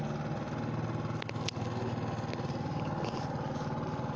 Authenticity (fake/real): real